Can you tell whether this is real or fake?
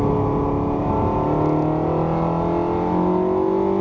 real